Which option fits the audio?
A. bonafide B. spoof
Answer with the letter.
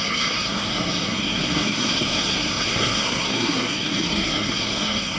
B